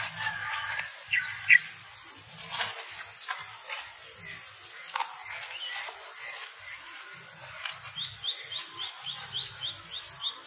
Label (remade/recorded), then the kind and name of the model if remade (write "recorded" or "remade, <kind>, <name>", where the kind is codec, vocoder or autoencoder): recorded